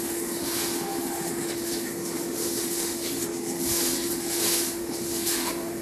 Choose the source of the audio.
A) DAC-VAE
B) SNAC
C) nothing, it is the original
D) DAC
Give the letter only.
A